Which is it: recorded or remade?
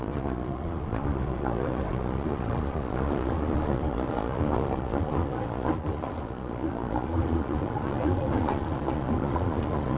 remade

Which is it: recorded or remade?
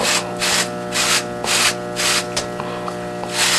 recorded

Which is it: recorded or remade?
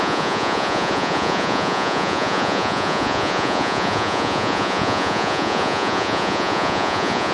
remade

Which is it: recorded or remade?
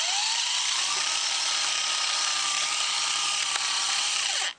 remade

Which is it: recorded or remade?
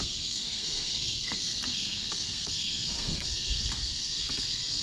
remade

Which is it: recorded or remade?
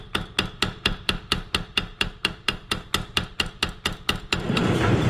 remade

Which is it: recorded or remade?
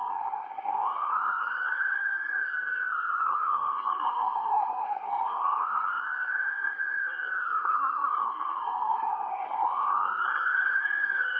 remade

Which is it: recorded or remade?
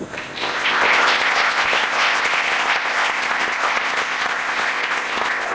remade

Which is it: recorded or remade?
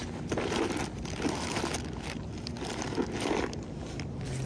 recorded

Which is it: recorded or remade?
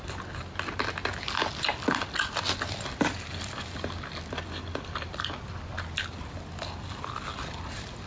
recorded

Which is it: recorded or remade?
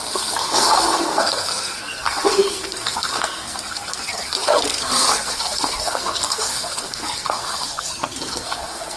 remade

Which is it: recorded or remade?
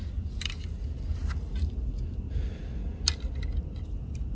recorded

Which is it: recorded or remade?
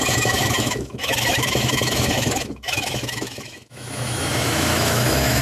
remade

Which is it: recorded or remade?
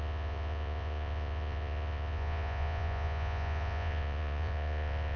remade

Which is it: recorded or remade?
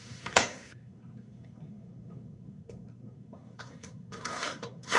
remade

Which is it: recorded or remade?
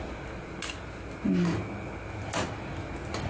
recorded